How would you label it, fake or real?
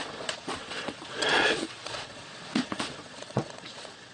fake